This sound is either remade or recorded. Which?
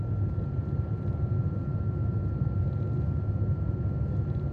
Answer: recorded